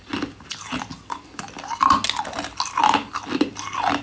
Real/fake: real